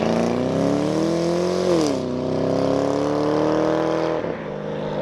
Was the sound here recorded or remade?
recorded